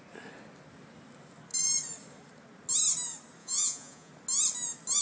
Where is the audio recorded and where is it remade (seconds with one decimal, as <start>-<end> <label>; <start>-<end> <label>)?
0.0-3.4 recorded; 3.4-4.1 remade; 4.1-5.0 recorded